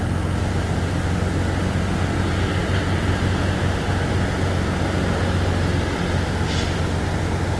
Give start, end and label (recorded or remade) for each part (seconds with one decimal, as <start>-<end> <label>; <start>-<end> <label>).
0.0-7.6 recorded

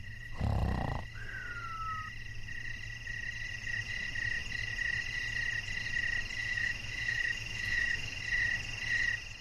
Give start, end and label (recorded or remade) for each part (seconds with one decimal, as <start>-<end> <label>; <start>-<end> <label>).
0.0-6.4 recorded; 6.4-8.2 remade; 8.2-9.4 recorded

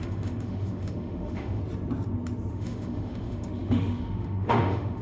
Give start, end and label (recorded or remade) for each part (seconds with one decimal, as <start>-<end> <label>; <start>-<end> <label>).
0.0-1.6 remade; 1.6-2.5 recorded; 2.5-5.0 remade

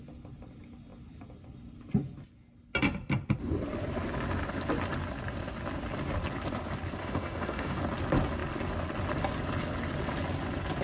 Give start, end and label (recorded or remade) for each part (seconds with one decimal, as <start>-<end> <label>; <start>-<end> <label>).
0.0-7.0 recorded; 7.0-7.8 remade; 7.8-10.8 recorded

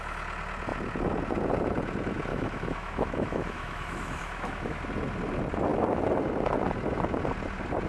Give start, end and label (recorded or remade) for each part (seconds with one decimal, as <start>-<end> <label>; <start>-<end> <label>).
0.0-2.3 recorded; 2.3-4.8 remade; 4.8-7.9 recorded

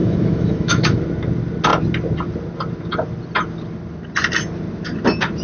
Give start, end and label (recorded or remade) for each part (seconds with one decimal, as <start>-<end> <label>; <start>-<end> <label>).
0.0-1.0 remade; 1.0-5.4 recorded